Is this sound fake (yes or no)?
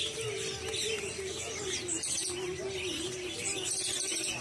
no